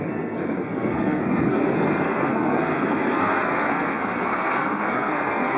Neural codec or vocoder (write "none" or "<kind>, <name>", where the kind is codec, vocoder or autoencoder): codec, SNAC